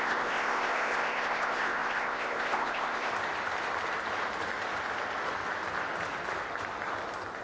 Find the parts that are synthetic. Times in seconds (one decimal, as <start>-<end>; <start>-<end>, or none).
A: 0.0-3.1